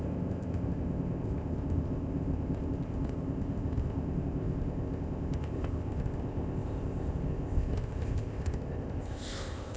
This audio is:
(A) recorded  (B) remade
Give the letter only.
B